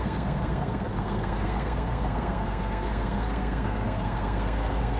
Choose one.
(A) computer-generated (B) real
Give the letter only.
A